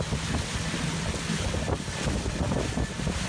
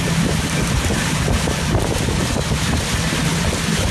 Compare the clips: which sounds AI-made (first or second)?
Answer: second